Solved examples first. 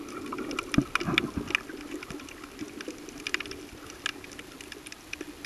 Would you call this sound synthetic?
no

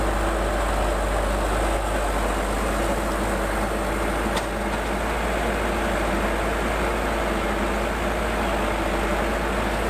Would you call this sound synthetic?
no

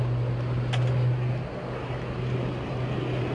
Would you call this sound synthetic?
no